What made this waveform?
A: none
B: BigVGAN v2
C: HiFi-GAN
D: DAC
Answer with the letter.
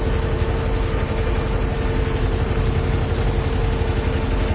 A